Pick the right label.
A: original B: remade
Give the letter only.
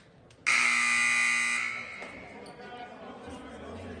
A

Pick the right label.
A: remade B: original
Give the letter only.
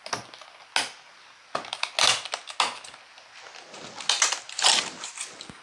B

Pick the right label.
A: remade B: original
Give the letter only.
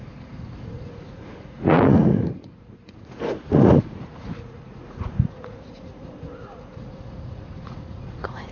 A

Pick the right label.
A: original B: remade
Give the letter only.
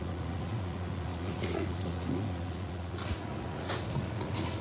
B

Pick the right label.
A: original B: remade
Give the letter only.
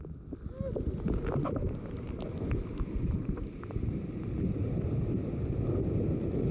A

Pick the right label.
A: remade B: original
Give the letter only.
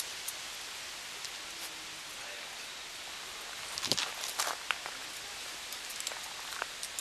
B